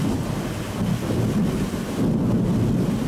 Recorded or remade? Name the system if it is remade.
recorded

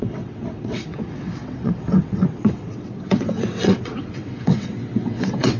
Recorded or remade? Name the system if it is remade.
remade, vocoder, WaveNeXt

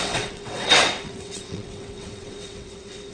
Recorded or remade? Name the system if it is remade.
remade, vocoder, WaveNeXt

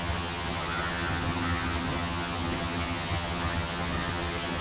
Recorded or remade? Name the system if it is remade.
remade, vocoder, HiFi-GAN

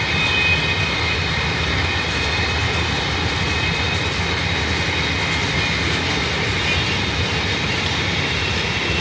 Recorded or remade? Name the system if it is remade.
recorded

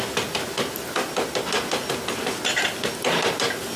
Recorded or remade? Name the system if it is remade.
recorded